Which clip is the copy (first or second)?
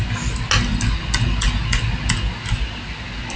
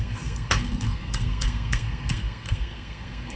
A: second